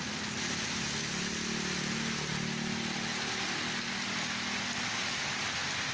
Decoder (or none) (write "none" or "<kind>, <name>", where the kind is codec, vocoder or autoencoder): none